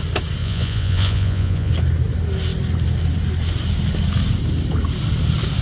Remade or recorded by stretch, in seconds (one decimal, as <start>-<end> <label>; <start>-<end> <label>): 0.0-0.4 recorded; 0.4-1.7 remade; 1.7-5.6 recorded